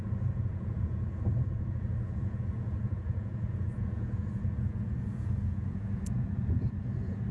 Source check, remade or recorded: remade